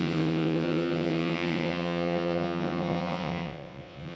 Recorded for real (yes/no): no